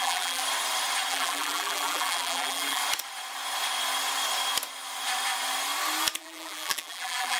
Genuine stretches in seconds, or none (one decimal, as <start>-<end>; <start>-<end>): 0.4-1.1; 2.8-6.2